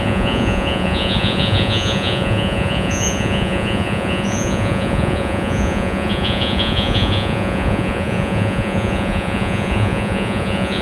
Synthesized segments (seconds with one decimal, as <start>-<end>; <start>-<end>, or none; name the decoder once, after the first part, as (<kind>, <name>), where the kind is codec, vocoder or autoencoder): 0.0-10.8 (vocoder, Vocos)